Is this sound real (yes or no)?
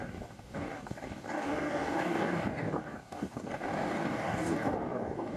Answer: no